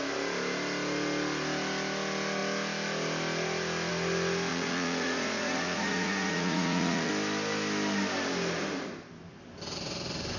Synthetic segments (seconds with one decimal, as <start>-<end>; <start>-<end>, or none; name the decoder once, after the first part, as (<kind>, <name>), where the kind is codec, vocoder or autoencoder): 4.5-7.1 (vocoder, Vocos)